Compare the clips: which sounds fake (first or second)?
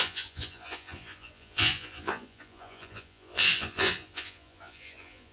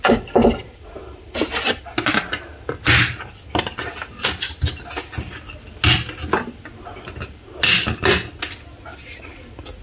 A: first